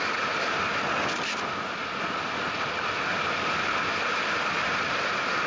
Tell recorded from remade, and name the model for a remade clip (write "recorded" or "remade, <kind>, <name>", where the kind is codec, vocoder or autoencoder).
recorded